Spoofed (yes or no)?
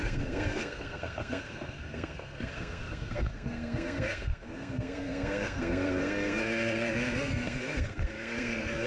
yes